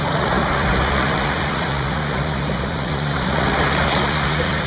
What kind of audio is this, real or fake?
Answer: fake